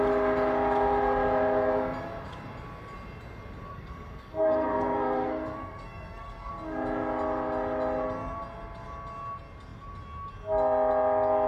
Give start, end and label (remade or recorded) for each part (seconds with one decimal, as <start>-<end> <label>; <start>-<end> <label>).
0.0-3.7 recorded; 3.7-6.5 remade; 6.5-11.5 recorded